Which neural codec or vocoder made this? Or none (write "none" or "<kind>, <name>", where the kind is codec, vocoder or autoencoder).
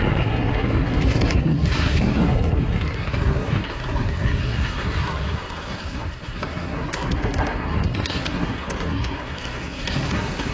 codec, SNAC